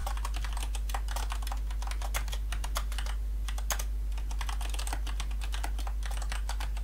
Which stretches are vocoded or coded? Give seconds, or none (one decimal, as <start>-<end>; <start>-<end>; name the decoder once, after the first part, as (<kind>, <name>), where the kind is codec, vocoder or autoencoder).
none

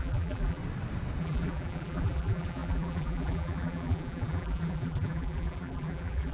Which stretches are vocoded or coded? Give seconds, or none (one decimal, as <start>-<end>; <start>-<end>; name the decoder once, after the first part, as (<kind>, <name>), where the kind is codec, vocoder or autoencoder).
0.0-0.6 (vocoder, BigVGAN v2); 1.2-6.3

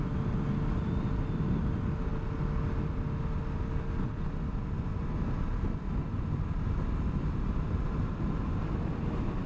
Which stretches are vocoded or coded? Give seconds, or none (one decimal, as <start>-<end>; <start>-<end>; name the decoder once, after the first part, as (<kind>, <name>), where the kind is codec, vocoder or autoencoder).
none

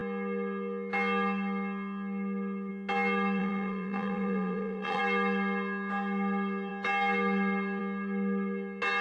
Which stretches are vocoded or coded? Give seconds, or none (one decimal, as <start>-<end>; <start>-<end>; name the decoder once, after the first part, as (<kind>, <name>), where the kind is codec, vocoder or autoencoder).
3.4-5.0 (vocoder, BigVGAN v2)

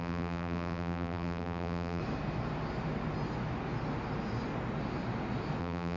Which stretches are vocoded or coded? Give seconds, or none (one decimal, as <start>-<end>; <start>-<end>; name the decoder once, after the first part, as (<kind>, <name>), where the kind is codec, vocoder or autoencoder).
0.0-2.0 (vocoder, BigVGAN v2); 5.6-6.0

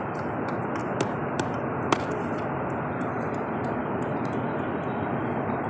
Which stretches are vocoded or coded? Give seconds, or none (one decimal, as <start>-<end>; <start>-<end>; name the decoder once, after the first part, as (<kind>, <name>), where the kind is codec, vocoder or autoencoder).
none